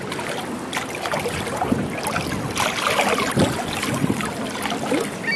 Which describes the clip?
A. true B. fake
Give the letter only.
A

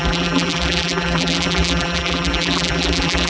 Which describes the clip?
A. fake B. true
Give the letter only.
A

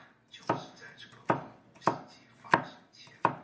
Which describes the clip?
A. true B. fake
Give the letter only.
A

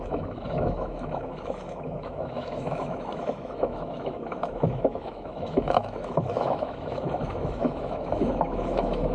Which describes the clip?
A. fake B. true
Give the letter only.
A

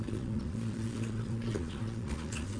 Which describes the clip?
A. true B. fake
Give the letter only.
B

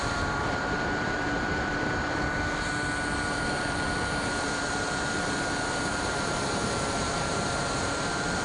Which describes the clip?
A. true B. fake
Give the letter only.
B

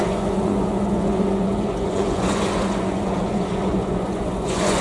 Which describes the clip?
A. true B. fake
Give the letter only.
B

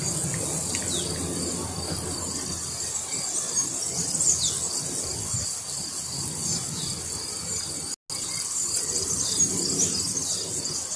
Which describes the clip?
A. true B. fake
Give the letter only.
A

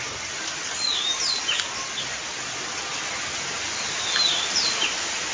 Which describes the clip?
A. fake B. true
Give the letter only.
B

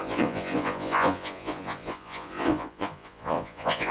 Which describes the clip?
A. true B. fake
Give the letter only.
B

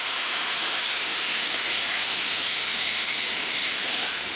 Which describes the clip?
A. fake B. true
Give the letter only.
A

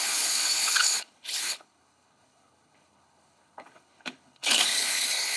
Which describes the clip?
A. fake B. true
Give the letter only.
A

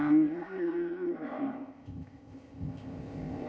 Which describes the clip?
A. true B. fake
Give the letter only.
B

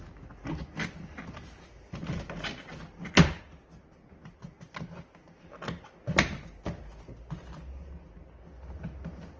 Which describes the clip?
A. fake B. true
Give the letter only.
B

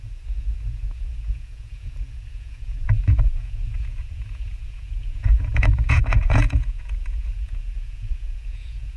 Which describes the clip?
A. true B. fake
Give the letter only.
B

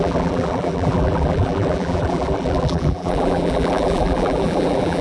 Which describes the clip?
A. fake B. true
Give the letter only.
A